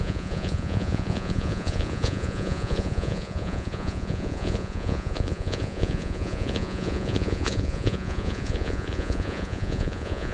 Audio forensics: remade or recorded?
remade